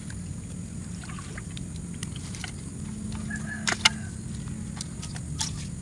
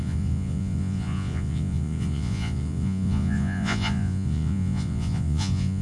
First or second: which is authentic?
first